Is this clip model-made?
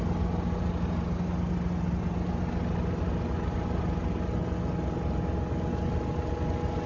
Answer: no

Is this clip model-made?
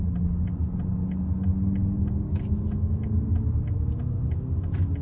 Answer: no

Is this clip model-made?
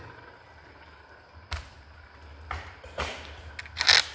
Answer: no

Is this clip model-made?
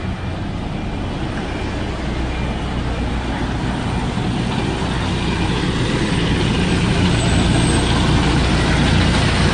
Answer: no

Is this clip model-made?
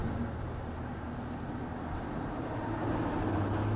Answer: no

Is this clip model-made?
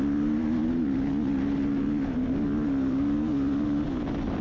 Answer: no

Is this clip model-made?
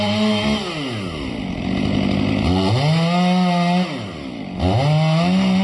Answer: no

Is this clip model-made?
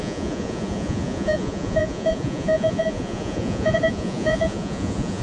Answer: yes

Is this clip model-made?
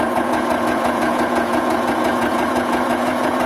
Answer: yes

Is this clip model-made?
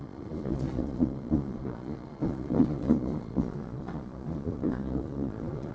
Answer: yes